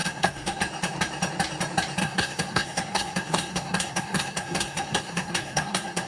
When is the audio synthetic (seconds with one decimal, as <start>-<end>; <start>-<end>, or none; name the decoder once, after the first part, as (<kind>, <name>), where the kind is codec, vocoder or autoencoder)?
0.0-0.6 (codec, SNAC); 2.0-6.1